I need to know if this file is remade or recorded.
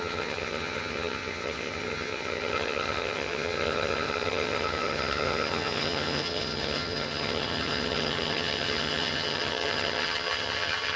remade